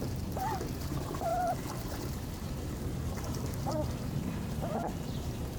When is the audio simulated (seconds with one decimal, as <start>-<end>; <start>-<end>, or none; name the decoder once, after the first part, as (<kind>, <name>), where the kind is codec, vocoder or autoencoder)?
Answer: 0.0-5.6 (vocoder, BigVGAN v2)